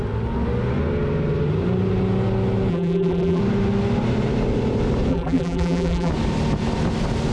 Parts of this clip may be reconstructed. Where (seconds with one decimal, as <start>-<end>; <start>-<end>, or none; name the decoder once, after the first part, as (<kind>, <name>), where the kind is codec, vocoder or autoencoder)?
2.7-3.4 (vocoder, BigVGAN v2); 5.1-6.1